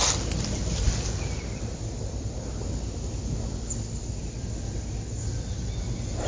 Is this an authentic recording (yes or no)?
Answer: yes